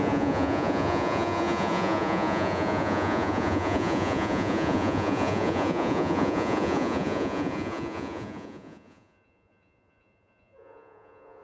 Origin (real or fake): fake